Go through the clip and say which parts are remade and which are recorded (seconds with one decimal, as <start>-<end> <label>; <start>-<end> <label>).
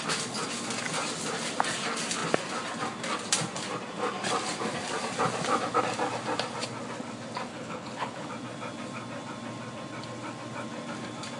0.0-7.5 recorded; 7.5-8.3 remade; 8.3-11.4 recorded